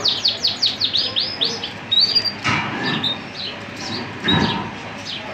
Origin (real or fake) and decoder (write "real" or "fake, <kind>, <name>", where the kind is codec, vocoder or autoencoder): real